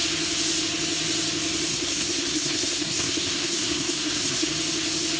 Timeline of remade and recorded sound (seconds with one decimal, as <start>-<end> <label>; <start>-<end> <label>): 0.0-1.7 recorded; 1.7-4.5 remade; 4.5-5.2 recorded